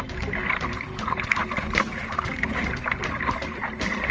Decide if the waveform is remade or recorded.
remade